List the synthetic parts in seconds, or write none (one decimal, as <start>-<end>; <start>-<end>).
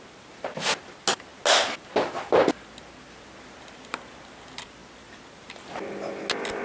none